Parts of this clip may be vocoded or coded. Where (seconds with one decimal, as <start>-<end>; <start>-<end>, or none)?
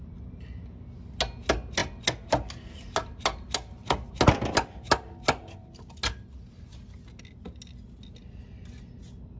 none